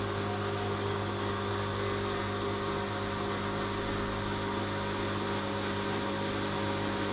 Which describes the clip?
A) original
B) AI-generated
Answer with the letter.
A